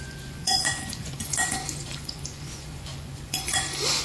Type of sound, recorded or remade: remade